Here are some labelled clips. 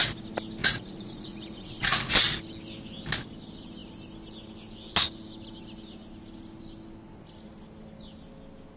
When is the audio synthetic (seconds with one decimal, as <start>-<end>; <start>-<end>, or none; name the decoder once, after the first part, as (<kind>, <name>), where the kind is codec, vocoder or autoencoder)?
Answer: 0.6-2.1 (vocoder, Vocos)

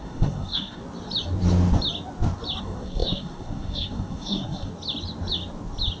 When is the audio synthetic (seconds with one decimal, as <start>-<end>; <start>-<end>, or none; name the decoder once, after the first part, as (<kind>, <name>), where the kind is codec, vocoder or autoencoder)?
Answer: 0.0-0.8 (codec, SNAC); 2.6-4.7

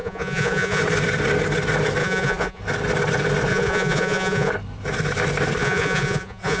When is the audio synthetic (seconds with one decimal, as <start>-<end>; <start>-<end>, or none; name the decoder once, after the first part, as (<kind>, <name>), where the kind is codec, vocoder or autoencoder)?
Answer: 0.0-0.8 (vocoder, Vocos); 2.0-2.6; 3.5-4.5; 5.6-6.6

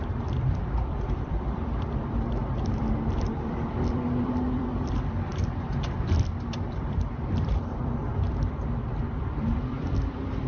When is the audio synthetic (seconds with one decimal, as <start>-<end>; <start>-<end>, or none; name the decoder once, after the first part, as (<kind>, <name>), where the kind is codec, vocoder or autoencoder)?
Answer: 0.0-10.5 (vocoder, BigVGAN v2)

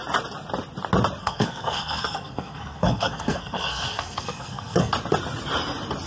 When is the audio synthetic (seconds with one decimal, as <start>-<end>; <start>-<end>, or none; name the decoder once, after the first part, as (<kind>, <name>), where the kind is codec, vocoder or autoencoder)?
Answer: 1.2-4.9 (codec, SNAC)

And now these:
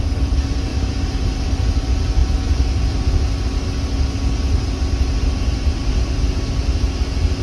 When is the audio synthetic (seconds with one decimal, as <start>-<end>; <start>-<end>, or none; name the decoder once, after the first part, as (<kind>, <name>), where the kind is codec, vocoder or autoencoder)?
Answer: none